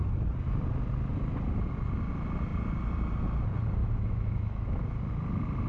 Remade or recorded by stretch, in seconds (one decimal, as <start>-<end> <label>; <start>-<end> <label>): 0.0-3.8 recorded; 3.8-4.8 remade; 4.8-5.7 recorded